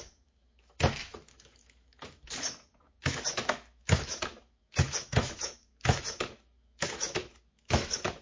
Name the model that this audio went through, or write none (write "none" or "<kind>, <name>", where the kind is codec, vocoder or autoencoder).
autoencoder, DAC-VAE